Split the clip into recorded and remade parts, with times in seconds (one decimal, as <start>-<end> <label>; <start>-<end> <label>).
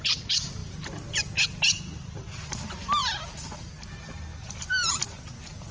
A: 0.0-3.0 recorded; 3.0-3.7 remade; 3.7-4.3 recorded; 4.3-4.9 remade; 4.9-5.7 recorded